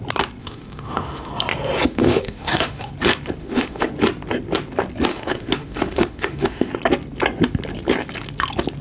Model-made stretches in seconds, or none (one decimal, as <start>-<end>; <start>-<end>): 0.4-1.3; 1.9-2.9; 3.4-3.9; 5.1-6.7